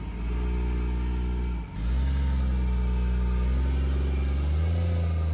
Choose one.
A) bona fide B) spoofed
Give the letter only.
A